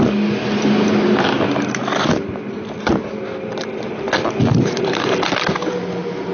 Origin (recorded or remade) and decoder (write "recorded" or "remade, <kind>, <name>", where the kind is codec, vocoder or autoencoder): recorded